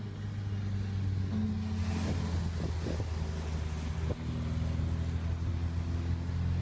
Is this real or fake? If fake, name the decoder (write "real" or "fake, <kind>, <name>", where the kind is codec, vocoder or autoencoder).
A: real